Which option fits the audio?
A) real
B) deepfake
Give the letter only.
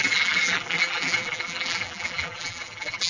B